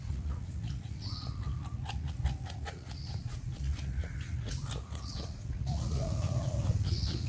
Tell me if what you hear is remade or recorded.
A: remade